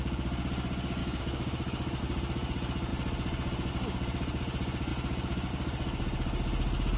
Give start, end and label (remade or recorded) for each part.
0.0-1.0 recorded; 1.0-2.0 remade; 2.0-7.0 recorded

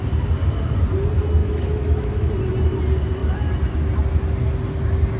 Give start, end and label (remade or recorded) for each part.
0.0-1.4 recorded; 1.4-2.3 remade; 2.3-5.2 recorded

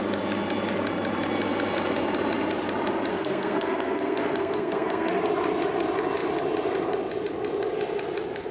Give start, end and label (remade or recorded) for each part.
0.0-3.1 recorded; 3.1-5.2 remade; 5.2-8.5 recorded

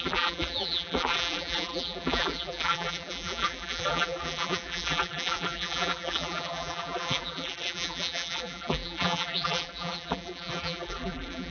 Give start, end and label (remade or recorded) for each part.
0.0-11.5 remade

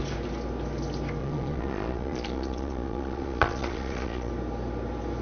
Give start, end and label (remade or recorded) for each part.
0.0-1.2 recorded; 1.2-4.3 remade; 4.3-5.2 recorded

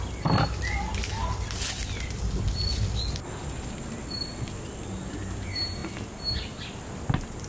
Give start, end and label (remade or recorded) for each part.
0.0-7.5 recorded

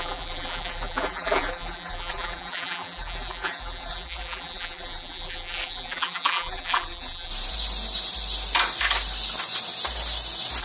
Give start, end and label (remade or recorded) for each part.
0.0-7.3 remade; 7.3-10.6 recorded